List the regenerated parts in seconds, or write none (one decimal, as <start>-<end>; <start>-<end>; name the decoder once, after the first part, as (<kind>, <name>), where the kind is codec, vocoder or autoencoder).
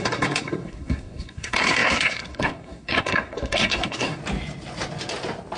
0.0-4.2 (codec, SNAC)